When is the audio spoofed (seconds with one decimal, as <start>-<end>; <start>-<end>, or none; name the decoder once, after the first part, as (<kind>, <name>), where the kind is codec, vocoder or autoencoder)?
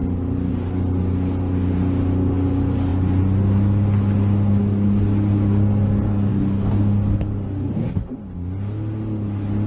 none